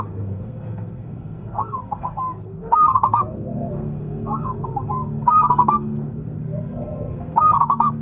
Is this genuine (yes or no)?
no